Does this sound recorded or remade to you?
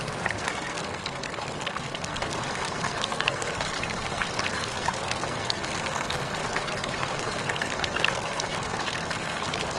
remade